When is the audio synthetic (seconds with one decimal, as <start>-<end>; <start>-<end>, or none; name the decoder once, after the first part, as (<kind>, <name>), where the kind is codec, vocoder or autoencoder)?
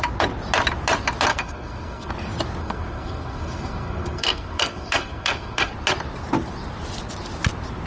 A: 1.3-2.1 (codec, SNAC); 2.6-5.7